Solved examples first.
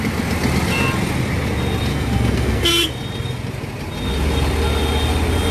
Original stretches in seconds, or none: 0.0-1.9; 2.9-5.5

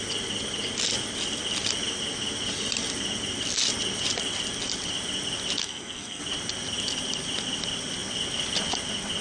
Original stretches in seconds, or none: 0.0-5.6; 6.2-9.2

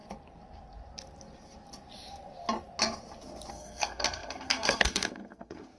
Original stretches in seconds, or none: 0.0-3.5